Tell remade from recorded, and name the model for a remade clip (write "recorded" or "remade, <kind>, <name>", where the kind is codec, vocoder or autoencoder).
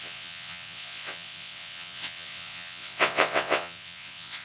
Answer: remade, vocoder, WaveNeXt